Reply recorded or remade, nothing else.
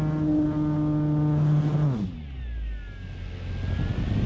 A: recorded